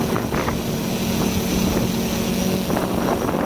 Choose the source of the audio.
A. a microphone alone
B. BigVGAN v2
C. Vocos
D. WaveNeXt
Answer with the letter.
A